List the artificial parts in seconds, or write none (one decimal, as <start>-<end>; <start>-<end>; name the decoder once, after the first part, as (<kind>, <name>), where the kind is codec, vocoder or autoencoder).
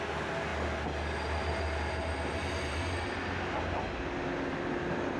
none